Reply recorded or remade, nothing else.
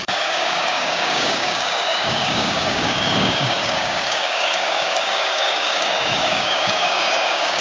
remade